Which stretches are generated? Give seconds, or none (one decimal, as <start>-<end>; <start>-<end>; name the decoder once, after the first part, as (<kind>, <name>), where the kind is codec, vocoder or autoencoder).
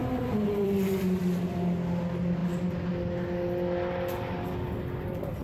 0.0-1.2 (vocoder, BigVGAN v2)